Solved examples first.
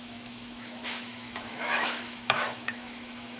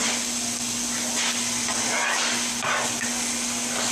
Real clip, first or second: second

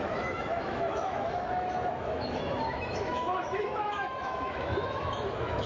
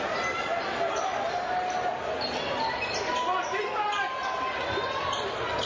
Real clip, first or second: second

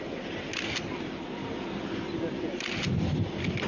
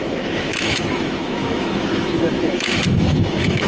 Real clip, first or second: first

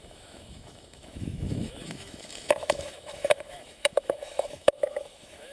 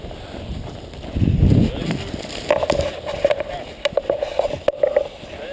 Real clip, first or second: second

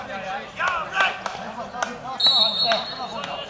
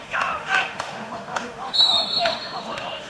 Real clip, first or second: first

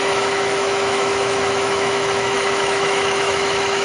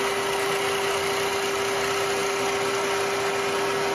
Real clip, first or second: second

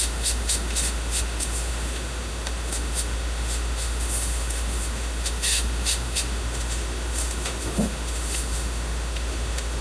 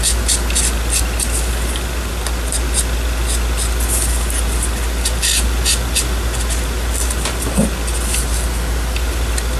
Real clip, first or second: second